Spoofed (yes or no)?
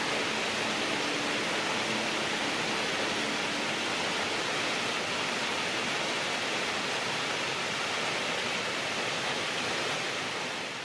no